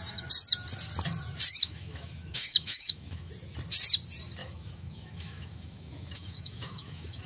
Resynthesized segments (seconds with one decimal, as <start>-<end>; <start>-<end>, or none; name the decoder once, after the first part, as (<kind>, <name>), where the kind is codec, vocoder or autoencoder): 1.6-3.3 (autoencoder, DAC-VAE); 4.4-7.3